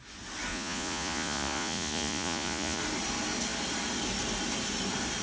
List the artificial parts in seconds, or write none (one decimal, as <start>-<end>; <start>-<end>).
0.5-2.8

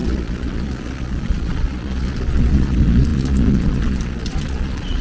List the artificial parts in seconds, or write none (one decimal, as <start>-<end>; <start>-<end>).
0.0-5.0

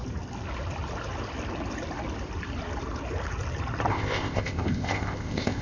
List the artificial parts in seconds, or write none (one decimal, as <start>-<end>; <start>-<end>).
3.9-5.6

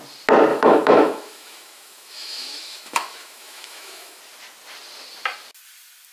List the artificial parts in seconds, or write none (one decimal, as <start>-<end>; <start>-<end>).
0.5-4.2

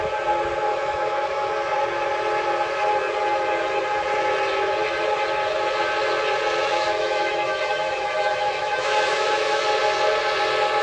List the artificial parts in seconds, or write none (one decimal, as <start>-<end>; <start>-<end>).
0.7-1.5; 6.6-9.6